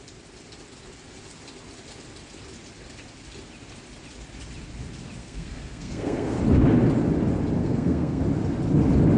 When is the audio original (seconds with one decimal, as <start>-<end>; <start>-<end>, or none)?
0.0-5.2; 6.4-7.6; 8.2-9.2